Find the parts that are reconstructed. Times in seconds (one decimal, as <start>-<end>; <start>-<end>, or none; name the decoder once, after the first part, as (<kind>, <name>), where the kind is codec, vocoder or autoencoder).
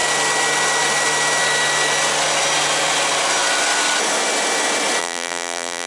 5.0-5.9 (vocoder, BigVGAN v2)